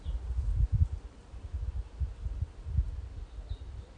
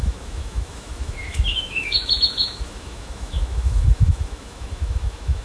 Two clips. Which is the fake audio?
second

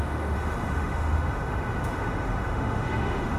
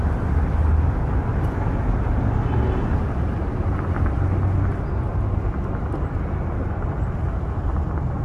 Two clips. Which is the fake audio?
first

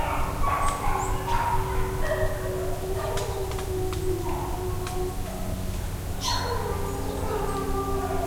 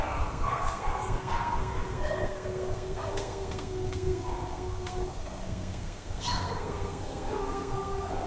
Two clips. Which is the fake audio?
second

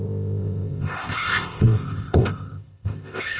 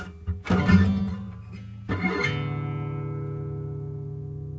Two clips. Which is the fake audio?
first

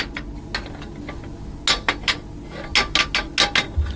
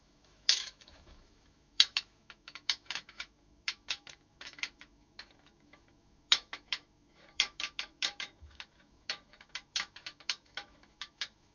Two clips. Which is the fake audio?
second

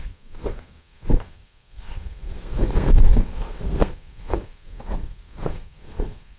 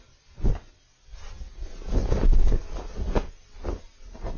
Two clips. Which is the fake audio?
first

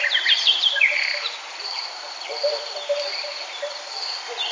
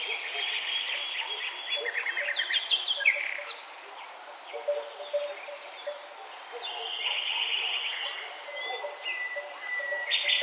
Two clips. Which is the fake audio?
first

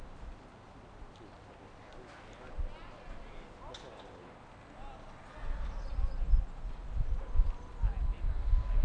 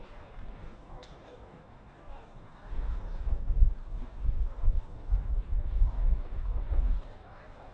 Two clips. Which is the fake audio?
second